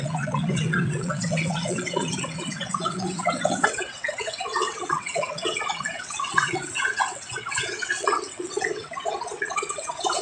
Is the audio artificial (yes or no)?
yes